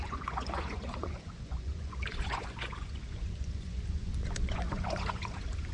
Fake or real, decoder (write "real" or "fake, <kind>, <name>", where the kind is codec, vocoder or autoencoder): fake, vocoder, Vocos